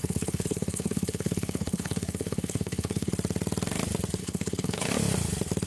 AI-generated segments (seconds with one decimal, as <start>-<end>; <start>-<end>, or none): 0.0-3.1; 4.2-4.9